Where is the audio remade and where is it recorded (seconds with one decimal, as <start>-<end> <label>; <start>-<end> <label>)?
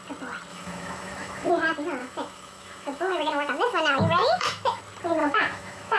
0.0-0.5 recorded; 0.5-1.5 remade; 1.5-2.0 recorded; 2.0-4.8 remade; 4.8-5.2 recorded; 5.2-6.0 remade